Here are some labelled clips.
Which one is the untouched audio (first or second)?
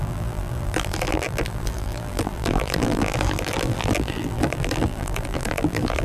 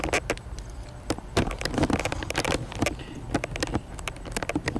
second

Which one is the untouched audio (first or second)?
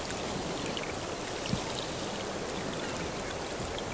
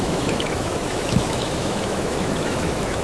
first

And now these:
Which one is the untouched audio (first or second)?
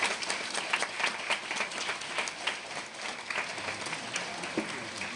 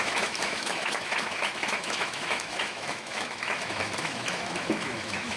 first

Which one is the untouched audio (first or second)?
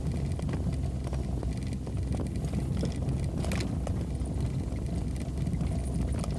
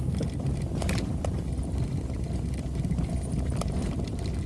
first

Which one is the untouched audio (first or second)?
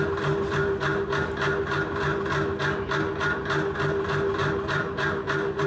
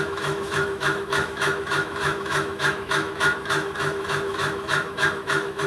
first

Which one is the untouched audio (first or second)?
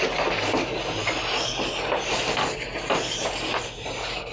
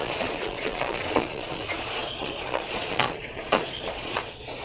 first